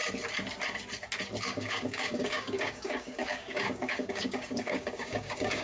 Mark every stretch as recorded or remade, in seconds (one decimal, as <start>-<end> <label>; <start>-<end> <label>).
0.0-1.4 recorded; 1.4-5.6 remade